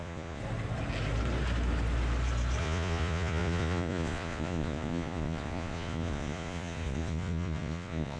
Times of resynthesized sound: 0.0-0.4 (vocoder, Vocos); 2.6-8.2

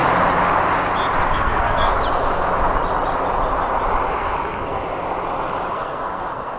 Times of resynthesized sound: 1.3-1.9 (codec, SNAC); 4.1-4.8; 5.7-6.6

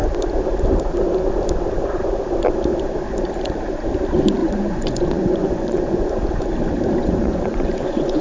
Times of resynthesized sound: 4.4-6.1 (vocoder, Vocos); 7.0-8.2

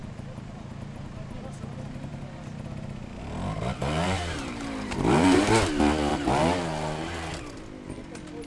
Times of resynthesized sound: 3.8-5.4 (vocoder, BigVGAN v2); 6.1-7.6

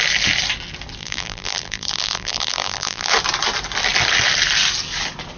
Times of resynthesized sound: 1.0-3.1 (vocoder, BigVGAN v2)